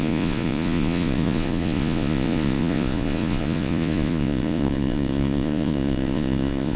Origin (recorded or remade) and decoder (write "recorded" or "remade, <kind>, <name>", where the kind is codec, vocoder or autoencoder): remade, vocoder, Vocos